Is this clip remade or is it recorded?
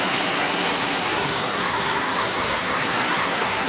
remade